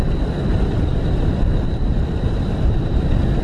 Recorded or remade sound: recorded